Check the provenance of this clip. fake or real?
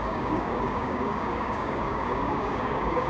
fake